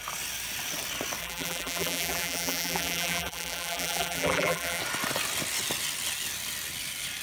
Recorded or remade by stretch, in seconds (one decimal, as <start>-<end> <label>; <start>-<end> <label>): 0.0-1.2 recorded; 1.2-4.8 remade; 4.8-7.2 recorded